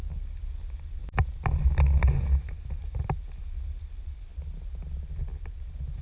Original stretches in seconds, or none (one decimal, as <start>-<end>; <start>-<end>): 0.0-6.0